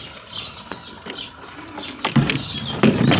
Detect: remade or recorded recorded